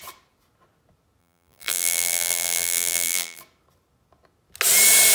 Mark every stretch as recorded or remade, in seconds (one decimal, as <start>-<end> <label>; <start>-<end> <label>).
0.0-1.2 recorded; 1.2-3.4 remade; 3.4-5.1 recorded